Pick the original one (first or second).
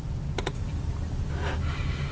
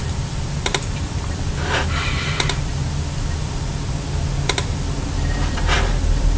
first